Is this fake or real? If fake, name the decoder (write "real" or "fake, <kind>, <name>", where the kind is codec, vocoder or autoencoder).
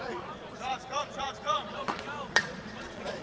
fake, vocoder, Vocos